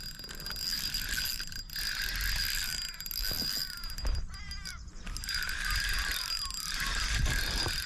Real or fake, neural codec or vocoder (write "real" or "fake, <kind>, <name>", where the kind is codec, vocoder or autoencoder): real